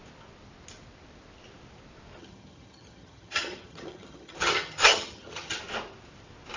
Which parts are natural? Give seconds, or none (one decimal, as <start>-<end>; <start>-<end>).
0.0-2.2; 5.6-6.6